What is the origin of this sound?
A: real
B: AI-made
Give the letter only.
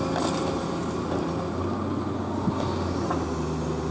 A